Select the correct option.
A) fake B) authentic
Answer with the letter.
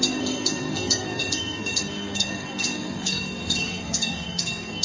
A